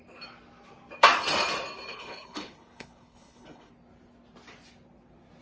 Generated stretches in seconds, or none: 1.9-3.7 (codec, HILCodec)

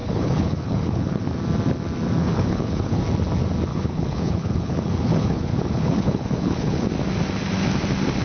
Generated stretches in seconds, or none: 0.0-1.2 (codec, HILCodec); 2.2-3.0; 3.7-6.9

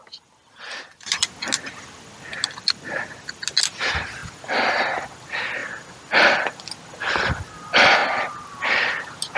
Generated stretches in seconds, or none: none

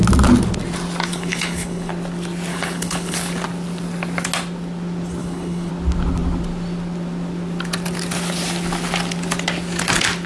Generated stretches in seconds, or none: 1.1-1.9 (codec, HILCodec); 2.5-3.3; 5.2-5.7

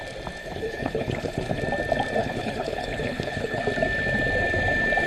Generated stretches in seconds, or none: 0.4-1.6 (codec, HILCodec); 2.2-3.6

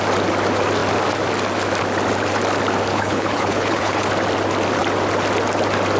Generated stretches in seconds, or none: 2.9-4.1 (codec, HILCodec)